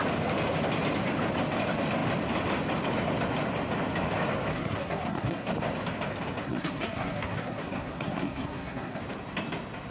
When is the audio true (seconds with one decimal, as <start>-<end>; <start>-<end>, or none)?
0.0-4.5; 5.5-6.4; 9.0-9.9